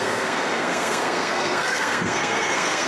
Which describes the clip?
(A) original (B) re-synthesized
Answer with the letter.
B